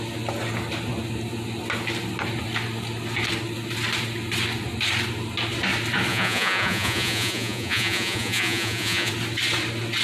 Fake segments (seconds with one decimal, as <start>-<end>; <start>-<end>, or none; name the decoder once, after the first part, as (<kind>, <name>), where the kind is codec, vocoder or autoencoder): 6.1-9.1 (vocoder, Vocos)